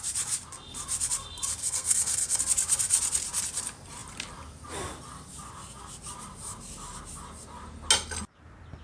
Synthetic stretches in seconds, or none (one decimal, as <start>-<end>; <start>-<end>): 1.6-2.4